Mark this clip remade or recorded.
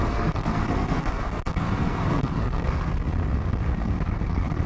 remade